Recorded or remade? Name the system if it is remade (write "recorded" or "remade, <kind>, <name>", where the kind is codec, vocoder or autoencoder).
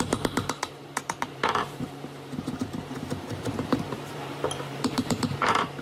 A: remade, vocoder, BigVGAN v2